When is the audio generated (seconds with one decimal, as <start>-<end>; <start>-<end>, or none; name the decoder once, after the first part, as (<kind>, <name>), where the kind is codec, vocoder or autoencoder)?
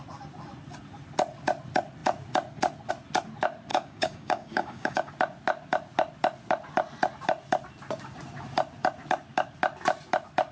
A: 3.7-5.1 (codec, DAC)